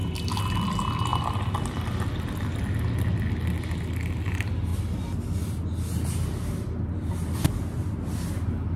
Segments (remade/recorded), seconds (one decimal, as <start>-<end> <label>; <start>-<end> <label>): 0.0-8.8 recorded